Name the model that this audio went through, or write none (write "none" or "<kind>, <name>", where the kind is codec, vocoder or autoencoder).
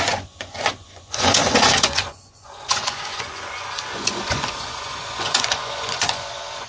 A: vocoder, Vocos